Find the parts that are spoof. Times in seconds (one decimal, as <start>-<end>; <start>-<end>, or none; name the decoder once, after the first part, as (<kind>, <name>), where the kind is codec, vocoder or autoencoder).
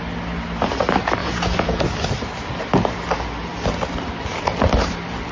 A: 1.2-1.8 (vocoder, Vocos)